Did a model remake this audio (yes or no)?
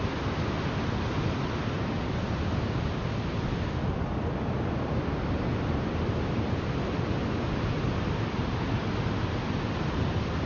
no